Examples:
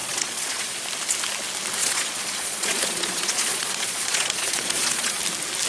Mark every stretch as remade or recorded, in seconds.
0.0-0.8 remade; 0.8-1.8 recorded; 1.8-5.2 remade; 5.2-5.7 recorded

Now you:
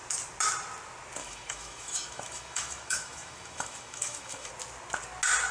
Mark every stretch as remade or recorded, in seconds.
0.0-1.2 recorded; 1.2-4.5 remade; 4.5-5.5 recorded

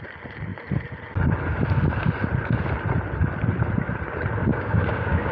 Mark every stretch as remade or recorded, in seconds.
0.0-4.4 recorded; 4.4-5.3 remade

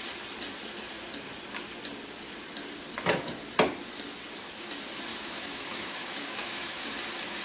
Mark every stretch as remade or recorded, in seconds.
0.0-5.1 recorded; 5.1-6.8 remade; 6.8-7.4 recorded

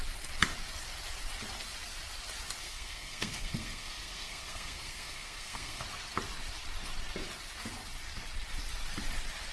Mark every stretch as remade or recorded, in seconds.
0.0-2.6 recorded; 2.6-5.8 remade; 5.8-9.5 recorded

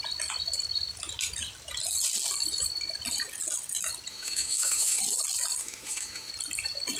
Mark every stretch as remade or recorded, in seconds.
0.0-4.1 recorded; 4.1-5.0 remade; 5.0-5.6 recorded; 5.6-6.3 remade; 6.3-7.0 recorded